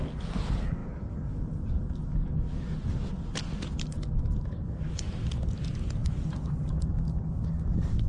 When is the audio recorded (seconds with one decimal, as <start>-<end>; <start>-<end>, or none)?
0.0-6.0; 6.7-8.1